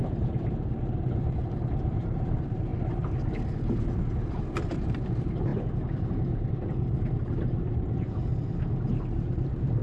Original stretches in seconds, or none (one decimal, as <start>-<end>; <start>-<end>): 2.7-4.3; 5.5-6.5; 8.3-9.2